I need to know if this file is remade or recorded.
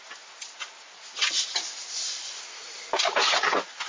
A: recorded